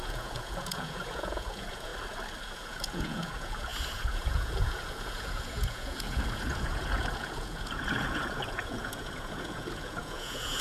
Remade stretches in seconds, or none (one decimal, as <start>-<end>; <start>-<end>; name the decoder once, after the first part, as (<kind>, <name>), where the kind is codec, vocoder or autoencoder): 0.0-1.9 (vocoder, Vocos); 2.4-10.6